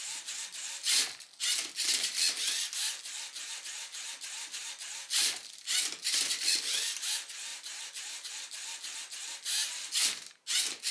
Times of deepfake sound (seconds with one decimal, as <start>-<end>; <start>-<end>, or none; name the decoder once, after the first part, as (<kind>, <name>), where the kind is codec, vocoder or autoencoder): none